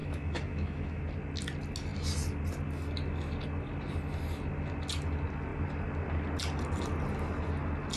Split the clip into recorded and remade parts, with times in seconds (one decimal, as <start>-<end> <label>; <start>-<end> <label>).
0.0-1.0 remade; 1.0-8.0 recorded